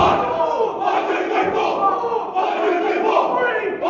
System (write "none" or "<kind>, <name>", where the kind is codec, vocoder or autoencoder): none